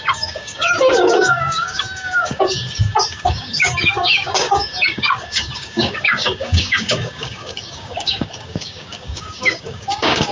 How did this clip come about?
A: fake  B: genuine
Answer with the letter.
A